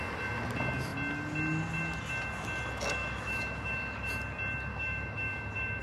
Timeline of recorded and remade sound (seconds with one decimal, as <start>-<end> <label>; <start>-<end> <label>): 0.0-3.0 recorded; 3.0-4.1 remade; 4.1-4.7 recorded; 4.7-5.8 remade

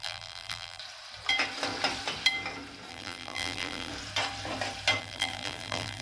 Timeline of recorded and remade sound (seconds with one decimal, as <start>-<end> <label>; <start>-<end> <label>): 0.0-0.8 remade; 0.8-2.9 recorded; 2.9-3.9 remade; 3.9-5.0 recorded; 5.0-6.0 remade

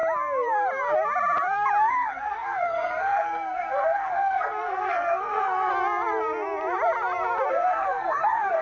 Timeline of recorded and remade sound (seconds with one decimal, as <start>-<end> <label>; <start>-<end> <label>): 0.0-1.9 recorded; 1.9-5.7 remade; 5.7-7.5 recorded; 7.5-8.6 remade

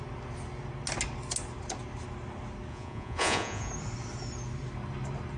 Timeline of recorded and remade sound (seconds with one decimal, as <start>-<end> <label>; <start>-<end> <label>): 0.0-2.7 recorded; 2.7-3.7 remade; 3.7-5.4 recorded

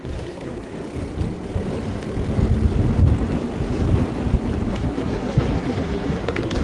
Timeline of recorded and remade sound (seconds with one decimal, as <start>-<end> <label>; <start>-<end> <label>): 0.0-0.7 remade; 0.7-4.7 recorded; 4.7-6.6 remade